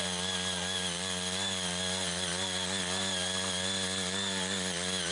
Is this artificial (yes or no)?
no